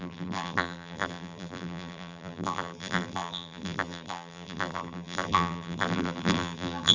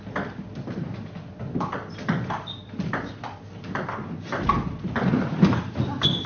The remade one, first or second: first